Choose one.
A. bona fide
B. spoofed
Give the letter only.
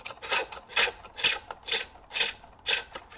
A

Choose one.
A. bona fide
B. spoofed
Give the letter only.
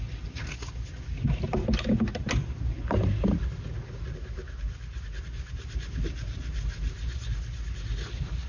A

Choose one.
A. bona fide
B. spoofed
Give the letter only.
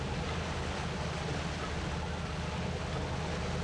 A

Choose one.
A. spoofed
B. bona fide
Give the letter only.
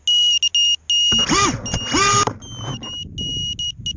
B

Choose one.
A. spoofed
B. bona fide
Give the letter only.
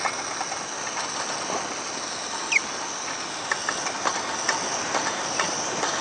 B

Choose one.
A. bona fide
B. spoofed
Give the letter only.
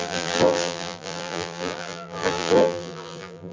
B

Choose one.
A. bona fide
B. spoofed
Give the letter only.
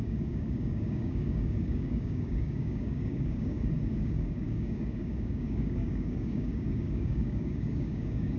B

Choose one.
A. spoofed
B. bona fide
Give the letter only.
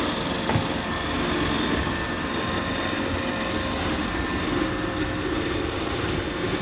B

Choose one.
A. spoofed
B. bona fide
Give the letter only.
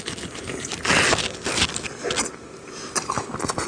B